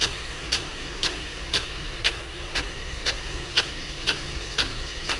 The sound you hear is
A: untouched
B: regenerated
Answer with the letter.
B